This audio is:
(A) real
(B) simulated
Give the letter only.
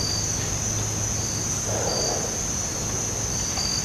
A